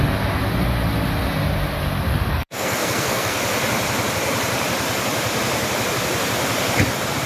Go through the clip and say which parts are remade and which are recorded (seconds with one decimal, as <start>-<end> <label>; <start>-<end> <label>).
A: 0.0-2.3 recorded; 2.3-3.4 remade; 3.4-7.3 recorded